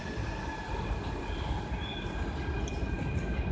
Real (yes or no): yes